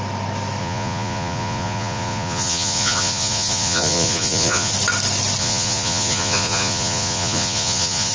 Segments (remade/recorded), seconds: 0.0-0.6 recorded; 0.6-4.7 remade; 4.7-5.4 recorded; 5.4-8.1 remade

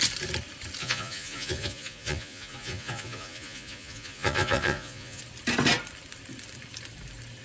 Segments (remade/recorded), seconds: 0.0-0.8 recorded; 0.8-5.2 remade; 5.2-7.4 recorded

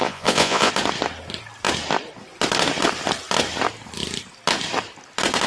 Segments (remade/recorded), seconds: 0.0-0.7 remade; 0.7-5.5 recorded

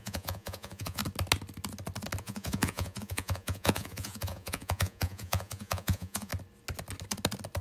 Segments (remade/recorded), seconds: 0.0-1.0 remade; 1.0-2.2 recorded; 2.2-6.3 remade; 6.3-7.6 recorded

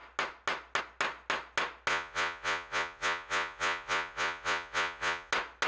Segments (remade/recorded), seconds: 0.0-1.9 recorded; 1.9-5.3 remade; 5.3-5.7 recorded

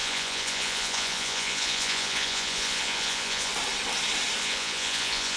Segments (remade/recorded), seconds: 0.0-3.5 remade; 3.5-4.4 recorded; 4.4-5.4 remade

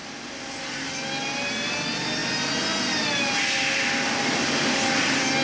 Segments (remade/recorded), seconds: 0.0-5.4 recorded

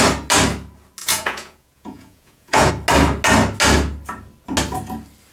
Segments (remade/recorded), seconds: 0.0-1.0 recorded; 1.0-2.7 remade; 2.7-5.3 recorded